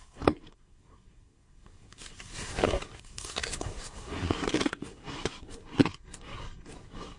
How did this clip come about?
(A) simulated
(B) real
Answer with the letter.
A